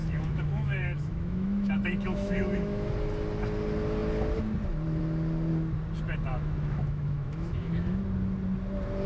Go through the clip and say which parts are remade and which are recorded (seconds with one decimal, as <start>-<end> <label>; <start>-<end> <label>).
0.0-2.9 remade; 2.9-6.3 recorded; 6.3-8.0 remade; 8.0-9.1 recorded